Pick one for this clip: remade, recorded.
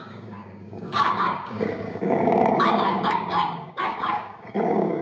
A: remade